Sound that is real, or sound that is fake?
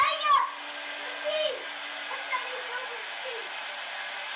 real